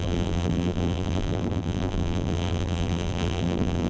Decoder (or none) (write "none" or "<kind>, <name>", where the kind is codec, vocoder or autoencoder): vocoder, BigVGAN v2